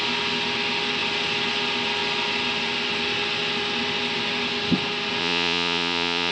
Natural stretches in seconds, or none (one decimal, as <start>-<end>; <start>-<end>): 0.0-5.2